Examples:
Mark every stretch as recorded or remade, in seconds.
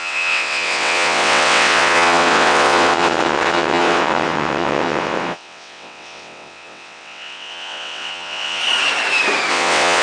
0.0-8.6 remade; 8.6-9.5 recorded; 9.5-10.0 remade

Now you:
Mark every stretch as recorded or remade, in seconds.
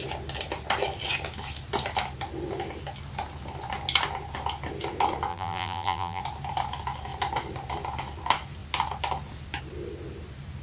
0.0-5.3 recorded; 5.3-6.2 remade; 6.2-10.6 recorded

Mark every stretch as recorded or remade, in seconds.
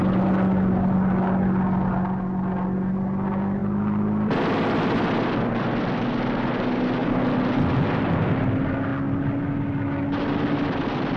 0.0-11.2 recorded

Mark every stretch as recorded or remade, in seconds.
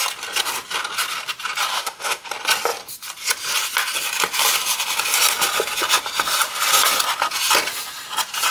0.0-1.7 recorded; 1.7-2.3 remade; 2.3-8.5 recorded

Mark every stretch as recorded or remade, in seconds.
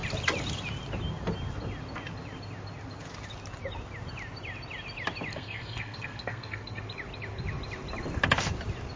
0.0-5.3 recorded; 5.3-6.8 remade; 6.8-9.0 recorded